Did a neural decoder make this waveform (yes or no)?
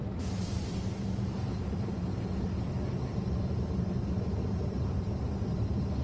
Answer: yes